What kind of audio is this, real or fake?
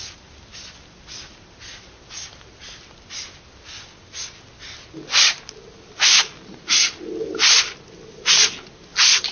real